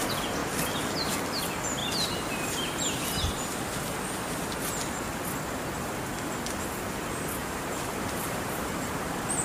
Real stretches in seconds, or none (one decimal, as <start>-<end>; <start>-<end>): 0.0-1.8; 4.7-7.4